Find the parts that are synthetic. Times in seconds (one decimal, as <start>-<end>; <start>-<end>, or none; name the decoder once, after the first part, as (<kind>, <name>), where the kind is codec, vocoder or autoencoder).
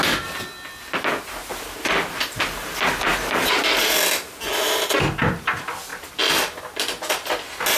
5.9-6.6 (vocoder, BigVGAN v2)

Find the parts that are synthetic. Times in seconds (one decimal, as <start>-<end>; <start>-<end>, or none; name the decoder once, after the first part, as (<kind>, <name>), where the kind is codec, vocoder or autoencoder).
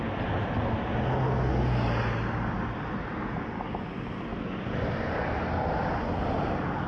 4.3-5.3 (vocoder, BigVGAN v2)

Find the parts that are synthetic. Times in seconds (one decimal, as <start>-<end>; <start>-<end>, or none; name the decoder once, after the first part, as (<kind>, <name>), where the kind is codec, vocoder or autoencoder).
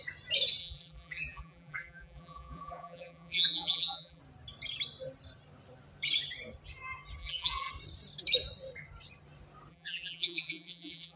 0.6-4.2 (vocoder, BigVGAN v2); 7.2-7.7; 9.7-11.2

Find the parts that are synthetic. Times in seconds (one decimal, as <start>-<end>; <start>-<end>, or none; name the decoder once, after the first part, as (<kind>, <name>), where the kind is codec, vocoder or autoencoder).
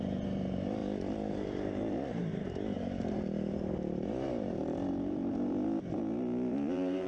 0.0-0.8 (vocoder, BigVGAN v2); 1.3-7.1